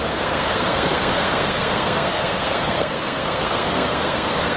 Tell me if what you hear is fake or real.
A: fake